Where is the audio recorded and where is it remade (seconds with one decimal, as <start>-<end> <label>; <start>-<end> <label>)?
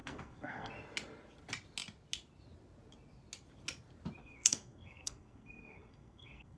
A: 0.0-0.7 remade; 0.7-4.2 recorded; 4.2-6.6 remade